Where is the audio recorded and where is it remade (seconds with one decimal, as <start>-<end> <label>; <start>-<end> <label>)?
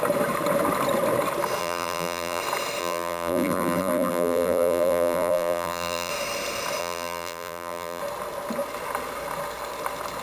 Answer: 0.0-1.6 recorded; 1.6-2.4 remade; 2.4-2.8 recorded; 2.8-6.1 remade; 6.1-6.8 recorded; 6.8-8.0 remade; 8.0-10.2 recorded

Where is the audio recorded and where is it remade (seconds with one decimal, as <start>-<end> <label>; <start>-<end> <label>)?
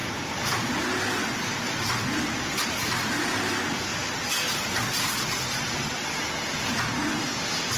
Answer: 0.0-7.8 recorded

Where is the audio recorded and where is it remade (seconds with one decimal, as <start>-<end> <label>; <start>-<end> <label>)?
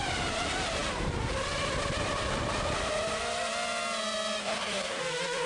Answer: 0.0-4.4 recorded; 4.4-5.0 remade; 5.0-5.5 recorded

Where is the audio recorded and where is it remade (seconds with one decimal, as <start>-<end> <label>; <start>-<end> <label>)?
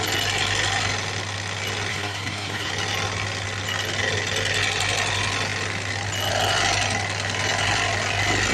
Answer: 0.0-1.9 recorded; 1.9-2.7 remade; 2.7-8.5 recorded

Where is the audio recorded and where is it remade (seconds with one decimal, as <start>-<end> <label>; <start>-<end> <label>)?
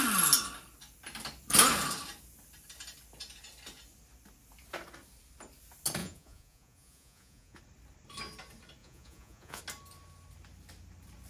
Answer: 0.0-6.0 recorded; 6.0-7.6 remade; 7.6-8.8 recorded; 8.8-9.6 remade; 9.6-11.3 recorded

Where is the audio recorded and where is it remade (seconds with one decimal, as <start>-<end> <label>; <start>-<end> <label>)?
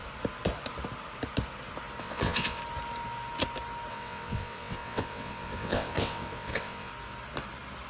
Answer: 0.0-2.0 recorded; 2.0-2.6 remade; 2.6-3.9 recorded; 3.9-6.9 remade; 6.9-7.9 recorded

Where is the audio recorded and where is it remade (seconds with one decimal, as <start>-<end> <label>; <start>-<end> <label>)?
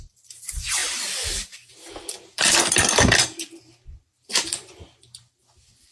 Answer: 0.0-0.8 remade; 0.8-1.7 recorded; 1.7-5.9 remade